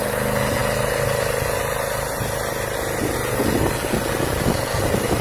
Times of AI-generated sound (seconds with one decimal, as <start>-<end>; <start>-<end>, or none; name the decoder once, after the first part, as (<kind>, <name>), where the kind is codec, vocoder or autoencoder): none